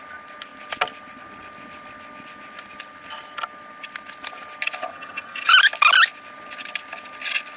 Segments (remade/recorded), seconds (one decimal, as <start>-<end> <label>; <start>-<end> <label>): 0.0-4.9 recorded; 4.9-5.5 remade; 5.5-7.6 recorded